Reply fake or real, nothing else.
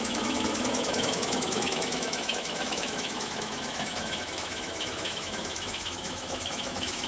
fake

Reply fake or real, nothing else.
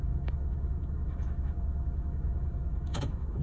fake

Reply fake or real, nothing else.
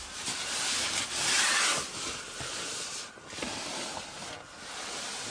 real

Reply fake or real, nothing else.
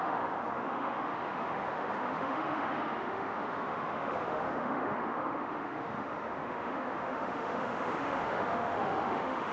fake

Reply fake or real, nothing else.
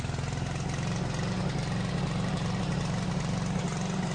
real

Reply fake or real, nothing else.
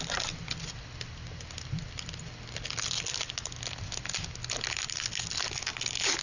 real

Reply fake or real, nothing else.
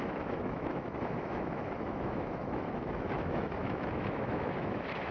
fake